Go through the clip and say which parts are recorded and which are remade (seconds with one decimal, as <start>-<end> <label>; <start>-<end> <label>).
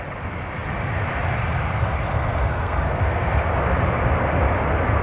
0.0-2.1 recorded; 2.1-3.3 remade; 3.3-5.0 recorded